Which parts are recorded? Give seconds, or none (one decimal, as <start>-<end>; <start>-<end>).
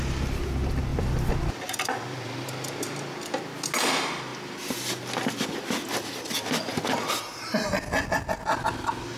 0.0-0.9; 1.4-9.2